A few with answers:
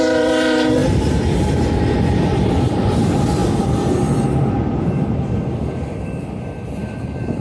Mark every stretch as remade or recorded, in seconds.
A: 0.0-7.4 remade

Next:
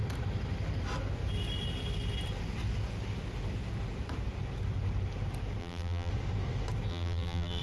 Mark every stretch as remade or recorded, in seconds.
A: 0.0-5.6 recorded; 5.6-6.1 remade; 6.1-6.9 recorded; 6.9-7.6 remade

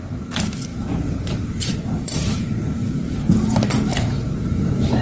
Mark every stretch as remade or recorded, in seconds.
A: 0.0-0.7 recorded; 0.7-3.7 remade; 3.7-5.0 recorded

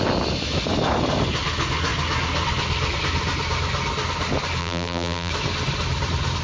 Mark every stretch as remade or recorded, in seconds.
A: 0.0-4.6 recorded; 4.6-5.3 remade; 5.3-6.4 recorded

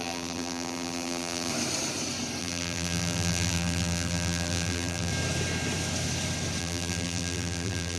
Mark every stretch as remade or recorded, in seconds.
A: 0.0-1.5 remade; 1.5-2.4 recorded; 2.4-5.1 remade; 5.1-6.6 recorded; 6.6-8.0 remade